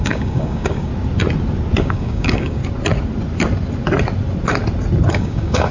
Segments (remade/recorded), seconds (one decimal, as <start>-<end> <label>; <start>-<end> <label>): 0.0-0.9 remade; 0.9-1.8 recorded; 1.8-2.6 remade; 2.6-5.1 recorded; 5.1-5.7 remade